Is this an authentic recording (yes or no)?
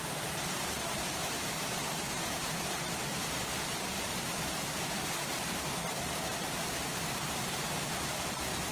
no